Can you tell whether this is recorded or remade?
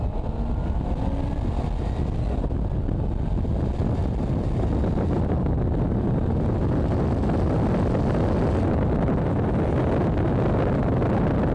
recorded